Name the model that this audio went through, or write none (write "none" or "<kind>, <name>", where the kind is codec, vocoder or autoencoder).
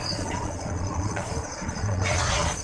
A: vocoder, Vocos